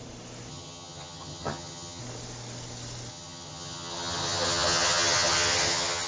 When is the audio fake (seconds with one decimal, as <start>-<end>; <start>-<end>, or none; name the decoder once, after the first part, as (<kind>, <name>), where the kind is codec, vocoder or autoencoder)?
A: 0.5-2.0 (vocoder, HiFi-GAN); 3.1-6.1